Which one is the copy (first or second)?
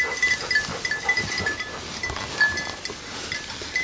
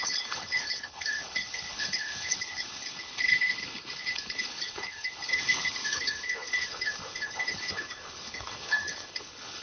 second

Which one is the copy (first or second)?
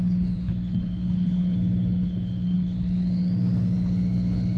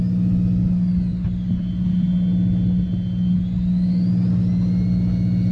first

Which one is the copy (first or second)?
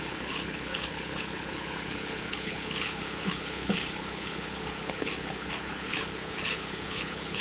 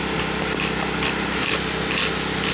first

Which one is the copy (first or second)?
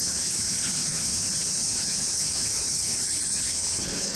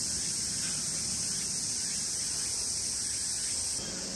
first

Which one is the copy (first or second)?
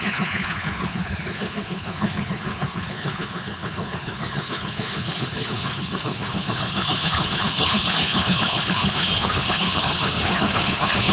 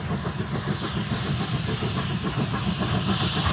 first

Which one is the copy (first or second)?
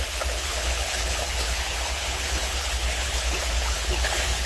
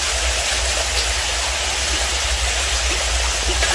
first